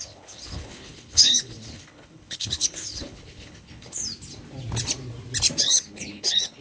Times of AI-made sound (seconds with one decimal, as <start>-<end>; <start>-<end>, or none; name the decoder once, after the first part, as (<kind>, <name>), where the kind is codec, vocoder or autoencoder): 0.0-4.0 (codec, HILCodec); 5.6-6.6